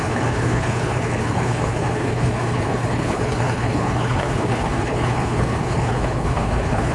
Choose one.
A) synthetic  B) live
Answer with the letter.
A